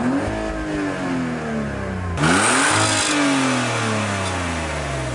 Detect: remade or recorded recorded